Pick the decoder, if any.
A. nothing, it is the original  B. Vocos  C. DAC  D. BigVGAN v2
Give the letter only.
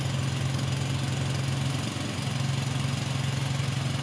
A